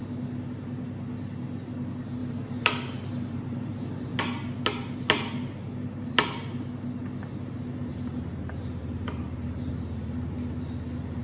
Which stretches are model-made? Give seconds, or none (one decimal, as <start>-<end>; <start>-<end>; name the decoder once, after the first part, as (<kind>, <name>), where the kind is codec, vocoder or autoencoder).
2.2-4.2 (vocoder, BigVGAN v2); 7.9-9.7